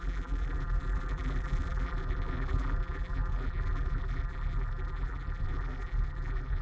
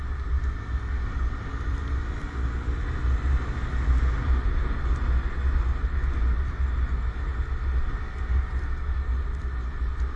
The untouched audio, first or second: second